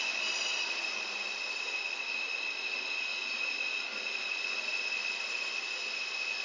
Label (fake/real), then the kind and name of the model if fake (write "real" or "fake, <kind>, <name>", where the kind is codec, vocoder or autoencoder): real